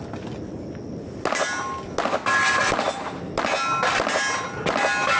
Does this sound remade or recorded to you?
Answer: recorded